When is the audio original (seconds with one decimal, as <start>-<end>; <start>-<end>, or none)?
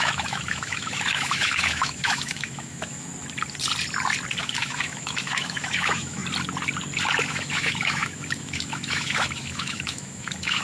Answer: 3.1-4.4; 6.2-7.2